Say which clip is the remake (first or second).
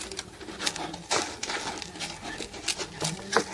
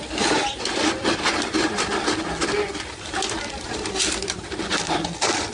second